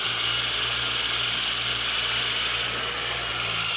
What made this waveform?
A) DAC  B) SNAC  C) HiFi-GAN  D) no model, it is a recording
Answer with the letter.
D